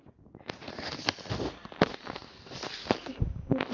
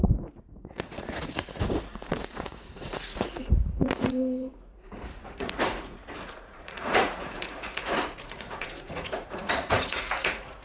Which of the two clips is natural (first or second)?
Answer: first